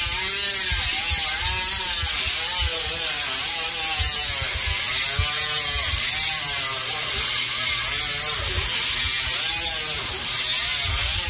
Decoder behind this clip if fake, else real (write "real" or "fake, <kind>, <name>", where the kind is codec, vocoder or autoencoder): real